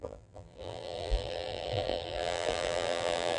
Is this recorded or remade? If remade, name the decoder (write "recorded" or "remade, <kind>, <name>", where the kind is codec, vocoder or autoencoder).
remade, vocoder, BigVGAN v2